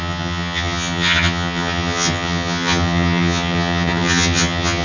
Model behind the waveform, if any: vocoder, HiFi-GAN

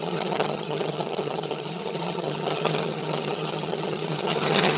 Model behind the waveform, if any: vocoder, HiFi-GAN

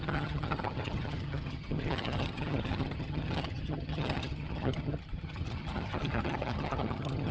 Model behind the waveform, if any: vocoder, HiFi-GAN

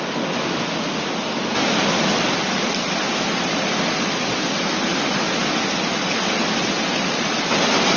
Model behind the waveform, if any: none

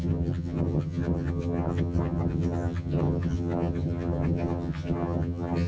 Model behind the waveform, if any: vocoder, HiFi-GAN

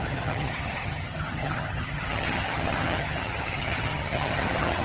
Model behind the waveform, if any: vocoder, HiFi-GAN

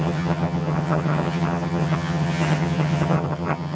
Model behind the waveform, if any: vocoder, HiFi-GAN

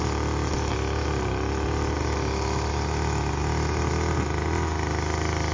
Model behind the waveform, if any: none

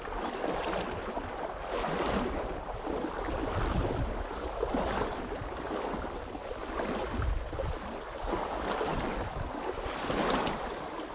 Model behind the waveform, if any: none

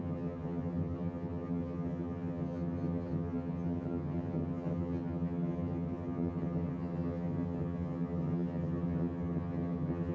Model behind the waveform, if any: vocoder, HiFi-GAN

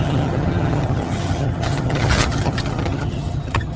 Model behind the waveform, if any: vocoder, HiFi-GAN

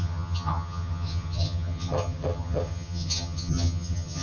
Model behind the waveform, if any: vocoder, HiFi-GAN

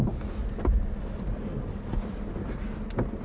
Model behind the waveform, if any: none